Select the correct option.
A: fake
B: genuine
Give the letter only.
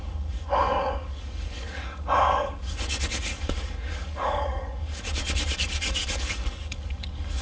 A